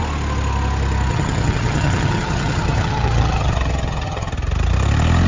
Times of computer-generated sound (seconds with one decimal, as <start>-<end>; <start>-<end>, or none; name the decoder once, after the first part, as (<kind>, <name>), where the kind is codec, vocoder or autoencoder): 1.1-4.3 (vocoder, HiFi-GAN)